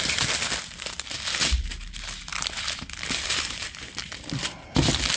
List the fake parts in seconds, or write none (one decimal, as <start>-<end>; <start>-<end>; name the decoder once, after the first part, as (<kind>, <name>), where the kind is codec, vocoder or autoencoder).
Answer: none